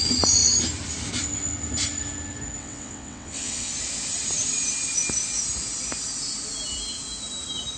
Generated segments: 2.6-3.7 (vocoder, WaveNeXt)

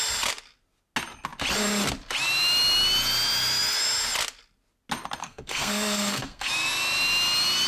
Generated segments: 5.2-6.5 (codec, SNAC)

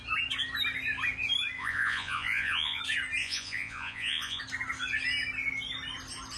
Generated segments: 1.6-2.8 (vocoder, Vocos); 3.2-4.4